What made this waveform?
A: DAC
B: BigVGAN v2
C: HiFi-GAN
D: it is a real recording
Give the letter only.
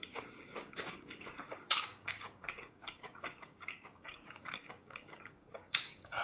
A